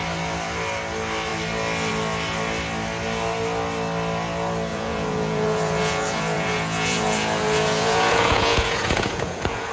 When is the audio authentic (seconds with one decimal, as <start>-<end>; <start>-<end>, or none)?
0.0-4.7